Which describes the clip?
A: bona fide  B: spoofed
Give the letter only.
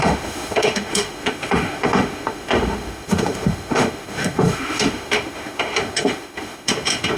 B